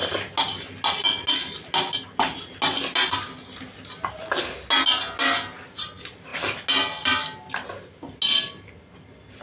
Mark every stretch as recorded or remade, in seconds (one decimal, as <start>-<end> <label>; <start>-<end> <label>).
0.0-9.4 recorded